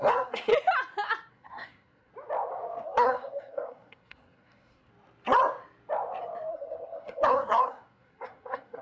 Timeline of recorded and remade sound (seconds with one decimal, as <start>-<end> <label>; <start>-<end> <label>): 0.0-0.5 remade; 0.5-1.3 recorded; 1.3-2.1 remade; 2.1-2.8 recorded; 2.8-4.9 remade; 4.9-6.5 recorded; 6.5-8.8 remade